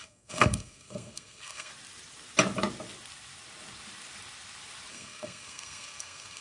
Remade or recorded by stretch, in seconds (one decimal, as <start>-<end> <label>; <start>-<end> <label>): 0.0-1.7 remade; 1.7-4.9 recorded; 4.9-6.4 remade